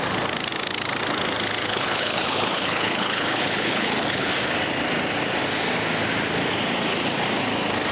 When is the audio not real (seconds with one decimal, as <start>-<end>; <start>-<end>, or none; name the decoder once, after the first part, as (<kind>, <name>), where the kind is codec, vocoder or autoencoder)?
1.6-4.3 (codec, HILCodec)

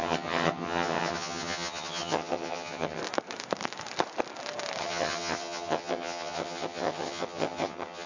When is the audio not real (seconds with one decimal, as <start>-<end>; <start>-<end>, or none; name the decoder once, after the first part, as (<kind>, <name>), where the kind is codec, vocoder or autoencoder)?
0.0-3.0 (vocoder, HiFi-GAN); 4.8-8.1

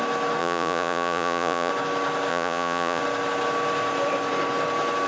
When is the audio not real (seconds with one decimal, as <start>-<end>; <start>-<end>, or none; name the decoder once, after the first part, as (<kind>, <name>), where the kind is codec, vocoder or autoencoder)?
0.4-1.7 (vocoder, Vocos); 2.3-3.0

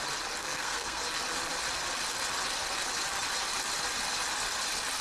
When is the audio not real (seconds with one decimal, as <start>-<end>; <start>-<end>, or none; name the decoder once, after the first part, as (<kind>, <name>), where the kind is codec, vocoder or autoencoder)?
0.4-1.0 (codec, SNAC)